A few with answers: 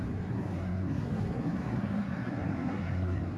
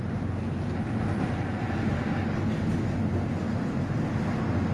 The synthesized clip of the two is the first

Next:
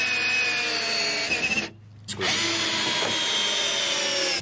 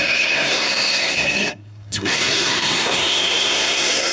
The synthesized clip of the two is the second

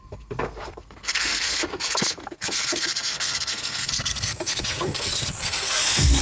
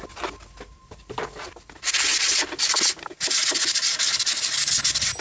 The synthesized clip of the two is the first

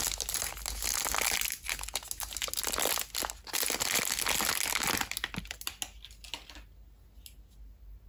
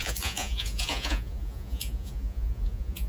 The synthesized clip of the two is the second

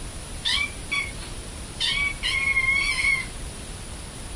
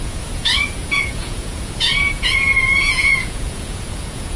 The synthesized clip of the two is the second